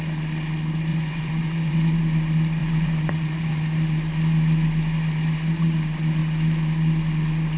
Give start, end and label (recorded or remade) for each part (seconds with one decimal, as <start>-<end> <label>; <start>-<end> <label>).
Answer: 0.0-0.9 recorded; 0.9-2.0 remade; 2.0-2.6 recorded; 2.6-3.5 remade; 3.5-7.6 recorded